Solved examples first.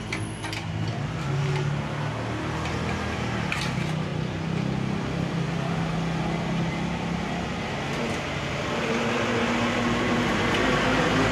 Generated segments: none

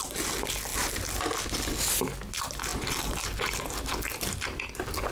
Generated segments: none

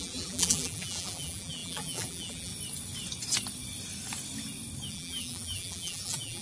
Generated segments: 0.0-2.5 (vocoder, BigVGAN v2); 4.9-6.4

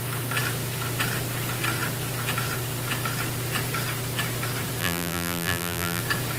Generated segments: 4.8-6.0 (vocoder, BigVGAN v2)

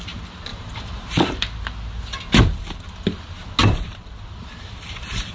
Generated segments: 0.5-1.3 (vocoder, BigVGAN v2); 3.6-5.3

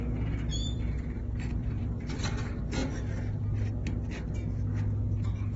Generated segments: 0.5-1.2 (vocoder, BigVGAN v2); 1.6-2.3